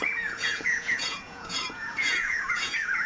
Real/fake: fake